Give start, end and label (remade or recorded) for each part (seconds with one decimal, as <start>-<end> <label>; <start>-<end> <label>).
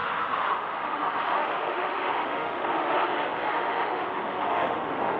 0.0-5.2 remade